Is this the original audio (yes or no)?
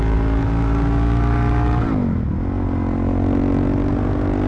yes